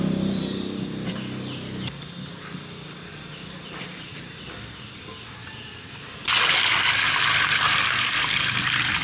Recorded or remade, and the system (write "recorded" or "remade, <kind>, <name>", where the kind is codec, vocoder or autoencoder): recorded